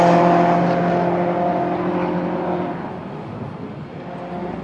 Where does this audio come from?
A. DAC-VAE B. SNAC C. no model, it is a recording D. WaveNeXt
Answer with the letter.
C